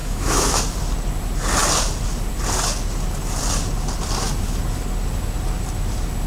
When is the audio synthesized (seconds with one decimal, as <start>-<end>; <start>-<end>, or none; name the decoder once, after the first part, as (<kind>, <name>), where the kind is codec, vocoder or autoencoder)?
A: 0.0-0.6 (autoencoder, DAC-VAE)